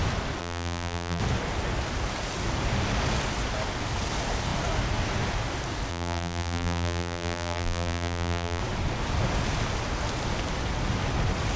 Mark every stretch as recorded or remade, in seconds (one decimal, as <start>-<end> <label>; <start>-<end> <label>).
0.0-0.4 recorded; 0.4-1.2 remade; 1.2-5.9 recorded; 5.9-8.6 remade; 8.6-11.6 recorded